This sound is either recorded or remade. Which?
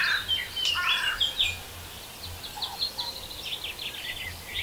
recorded